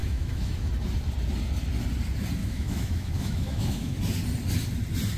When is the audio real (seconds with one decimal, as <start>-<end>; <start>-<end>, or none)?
0.7-2.4; 4.0-5.2